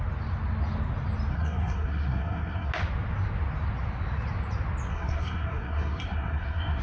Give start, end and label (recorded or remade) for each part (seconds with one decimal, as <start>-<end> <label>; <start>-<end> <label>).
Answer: 0.0-1.3 recorded; 1.3-2.7 remade; 2.7-4.9 recorded; 4.9-6.8 remade